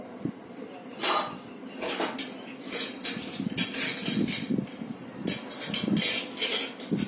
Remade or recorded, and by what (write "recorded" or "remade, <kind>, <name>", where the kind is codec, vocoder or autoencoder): recorded